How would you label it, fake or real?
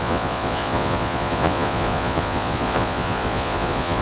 fake